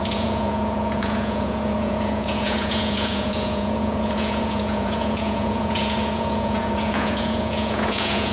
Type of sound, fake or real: fake